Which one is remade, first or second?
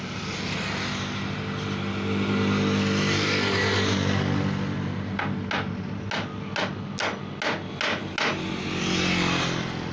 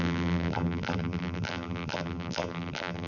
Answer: second